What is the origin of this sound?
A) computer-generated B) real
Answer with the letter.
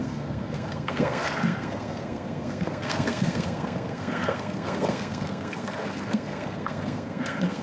A